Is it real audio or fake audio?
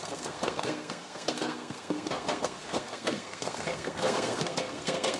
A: fake